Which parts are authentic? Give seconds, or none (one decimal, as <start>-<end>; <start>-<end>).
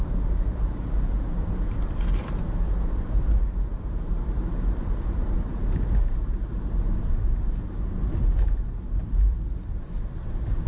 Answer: none